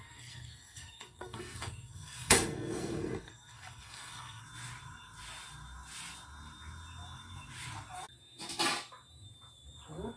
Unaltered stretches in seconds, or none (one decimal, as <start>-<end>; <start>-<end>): 4.4-10.2